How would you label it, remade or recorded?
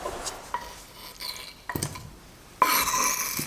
recorded